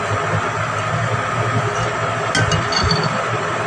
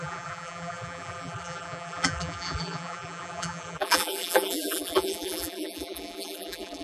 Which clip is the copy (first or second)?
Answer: second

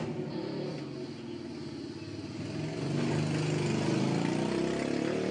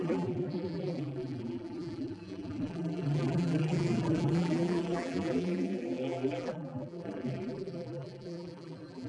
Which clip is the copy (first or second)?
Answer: second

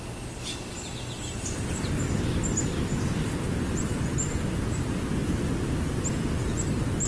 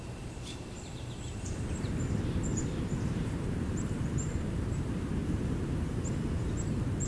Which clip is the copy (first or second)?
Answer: second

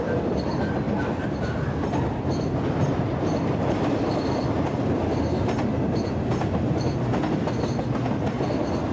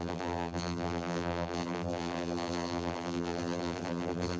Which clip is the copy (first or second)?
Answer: second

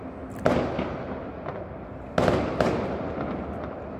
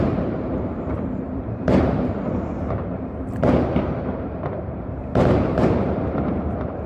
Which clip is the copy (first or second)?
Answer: second